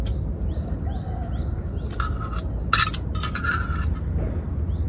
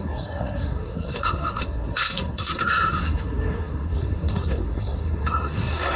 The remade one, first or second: second